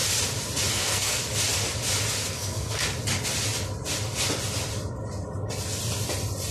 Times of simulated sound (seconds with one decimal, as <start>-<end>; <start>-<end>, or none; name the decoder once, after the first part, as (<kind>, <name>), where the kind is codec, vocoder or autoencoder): 0.7-1.2 (codec, SNAC); 2.3-2.8